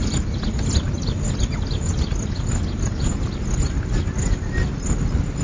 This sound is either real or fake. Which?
real